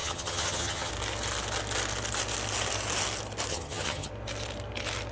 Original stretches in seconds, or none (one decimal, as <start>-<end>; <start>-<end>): 0.9-3.5; 4.1-5.1